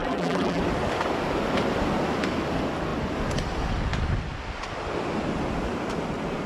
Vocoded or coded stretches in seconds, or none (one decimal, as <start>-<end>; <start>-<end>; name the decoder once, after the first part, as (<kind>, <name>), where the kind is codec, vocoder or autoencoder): 0.0-0.6 (vocoder, BigVGAN v2)